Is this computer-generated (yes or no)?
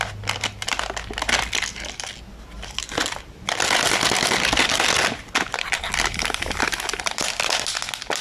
no